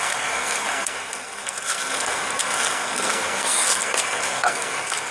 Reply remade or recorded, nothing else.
remade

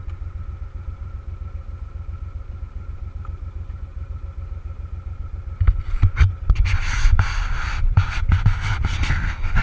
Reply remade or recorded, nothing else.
recorded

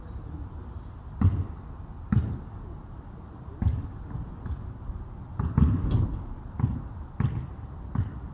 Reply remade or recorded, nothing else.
recorded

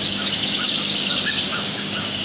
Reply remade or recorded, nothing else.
remade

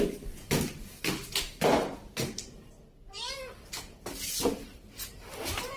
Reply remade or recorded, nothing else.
recorded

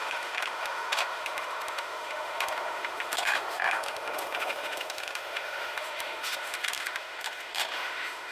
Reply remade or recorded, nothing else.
remade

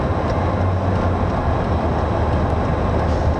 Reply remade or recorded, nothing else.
recorded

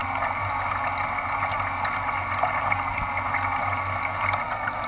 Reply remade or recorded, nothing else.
recorded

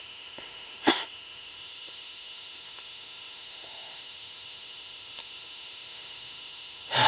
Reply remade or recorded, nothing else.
remade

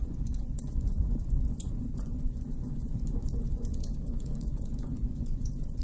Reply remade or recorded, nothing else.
remade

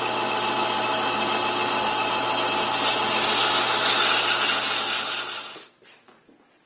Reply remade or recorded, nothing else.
recorded